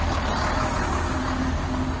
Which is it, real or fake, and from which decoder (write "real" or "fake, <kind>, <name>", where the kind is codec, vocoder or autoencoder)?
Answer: real